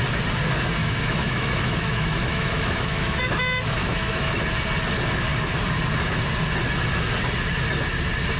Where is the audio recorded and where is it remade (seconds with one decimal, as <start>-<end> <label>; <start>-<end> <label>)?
0.0-0.8 recorded; 0.8-3.2 remade; 3.2-3.8 recorded; 3.8-4.4 remade; 4.4-8.4 recorded

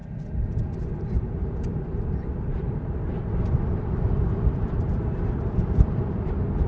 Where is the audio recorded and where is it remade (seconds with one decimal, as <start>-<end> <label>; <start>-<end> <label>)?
0.0-0.8 recorded; 0.8-6.7 remade

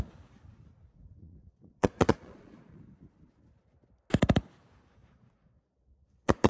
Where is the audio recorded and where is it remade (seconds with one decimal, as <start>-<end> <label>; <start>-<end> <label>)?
0.0-1.2 recorded; 1.2-2.8 remade; 2.8-5.0 recorded; 5.0-6.5 remade

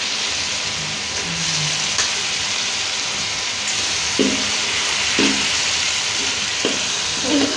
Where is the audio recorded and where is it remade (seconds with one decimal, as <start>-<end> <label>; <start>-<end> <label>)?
0.0-7.6 recorded